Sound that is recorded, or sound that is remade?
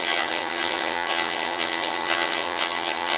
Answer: remade